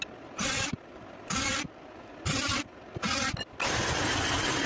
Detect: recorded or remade recorded